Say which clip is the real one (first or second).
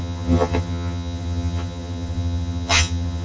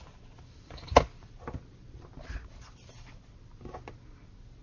second